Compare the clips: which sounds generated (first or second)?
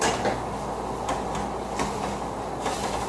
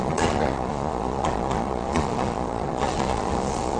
second